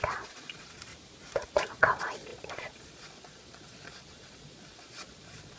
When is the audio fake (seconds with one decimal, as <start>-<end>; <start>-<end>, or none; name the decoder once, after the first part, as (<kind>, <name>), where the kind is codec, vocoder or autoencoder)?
0.0-0.9 (vocoder, Vocos); 1.7-5.6